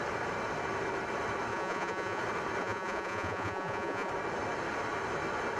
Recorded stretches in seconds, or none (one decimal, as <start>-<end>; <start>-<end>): 0.0-1.5; 2.2-2.6; 4.1-5.6